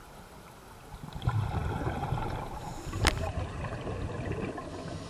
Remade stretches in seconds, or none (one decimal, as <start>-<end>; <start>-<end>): none